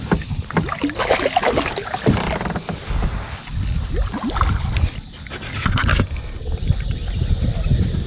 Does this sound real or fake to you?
real